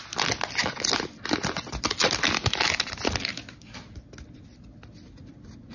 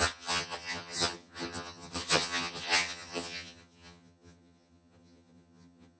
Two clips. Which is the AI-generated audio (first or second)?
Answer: second